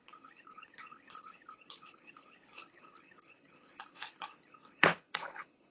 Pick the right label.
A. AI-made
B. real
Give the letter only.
A